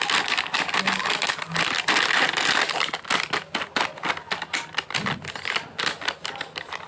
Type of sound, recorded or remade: recorded